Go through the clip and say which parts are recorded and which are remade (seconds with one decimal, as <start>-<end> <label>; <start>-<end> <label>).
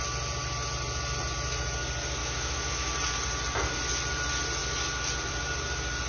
0.0-2.2 recorded; 2.2-2.9 remade; 2.9-6.1 recorded